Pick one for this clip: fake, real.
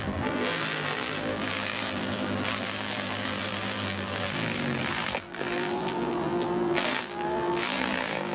fake